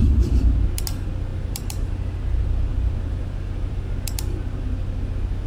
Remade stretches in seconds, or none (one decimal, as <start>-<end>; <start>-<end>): 1.3-1.9; 2.7-4.2